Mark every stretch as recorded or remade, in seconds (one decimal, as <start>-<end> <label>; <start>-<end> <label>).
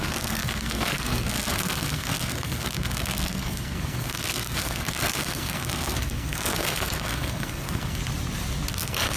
0.0-8.0 remade; 8.0-8.7 recorded; 8.7-9.2 remade